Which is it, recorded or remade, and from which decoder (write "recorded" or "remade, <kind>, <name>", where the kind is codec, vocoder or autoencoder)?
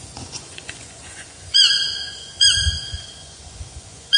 remade, vocoder, Vocos